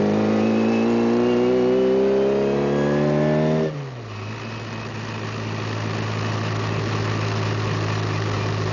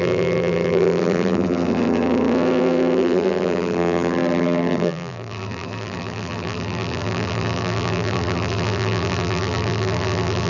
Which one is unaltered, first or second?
first